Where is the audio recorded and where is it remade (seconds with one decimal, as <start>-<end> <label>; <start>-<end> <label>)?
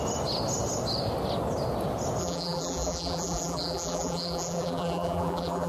0.0-2.2 recorded; 2.2-5.7 remade